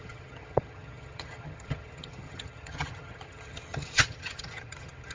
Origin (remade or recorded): remade